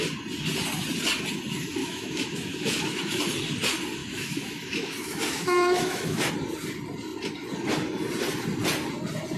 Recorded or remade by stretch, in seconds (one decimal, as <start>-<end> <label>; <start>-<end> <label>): 0.0-1.8 recorded; 1.8-3.2 remade; 3.2-4.0 recorded; 4.0-6.3 remade; 6.3-9.4 recorded